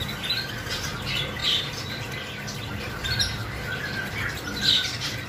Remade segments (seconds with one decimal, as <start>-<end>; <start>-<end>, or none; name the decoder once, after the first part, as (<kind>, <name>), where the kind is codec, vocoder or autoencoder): none